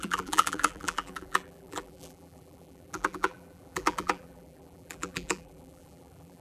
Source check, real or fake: fake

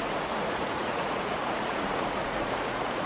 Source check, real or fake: fake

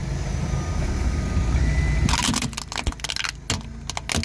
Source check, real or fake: real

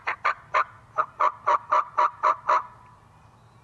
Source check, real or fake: real